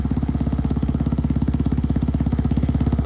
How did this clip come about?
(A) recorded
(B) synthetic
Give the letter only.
B